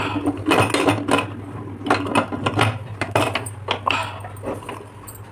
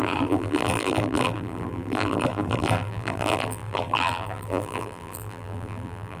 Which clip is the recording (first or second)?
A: first